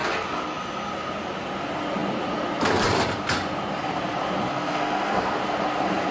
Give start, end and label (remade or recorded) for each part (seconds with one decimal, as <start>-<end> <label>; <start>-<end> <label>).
0.0-4.5 recorded; 4.5-5.4 remade; 5.4-6.1 recorded